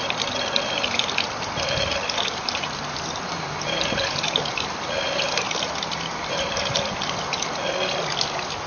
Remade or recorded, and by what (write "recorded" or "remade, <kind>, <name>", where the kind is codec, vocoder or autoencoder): recorded